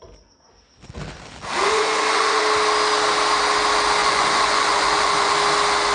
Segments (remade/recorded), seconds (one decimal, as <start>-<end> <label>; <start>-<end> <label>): 0.0-1.6 recorded; 1.6-2.4 remade; 2.4-4.0 recorded; 4.0-5.3 remade; 5.3-5.9 recorded